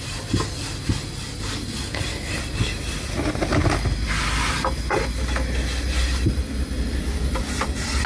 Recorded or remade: recorded